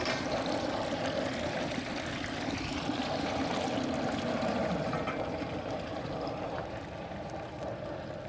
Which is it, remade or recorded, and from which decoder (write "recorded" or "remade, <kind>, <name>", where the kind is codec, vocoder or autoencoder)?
recorded